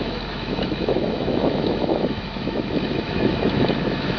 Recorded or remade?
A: remade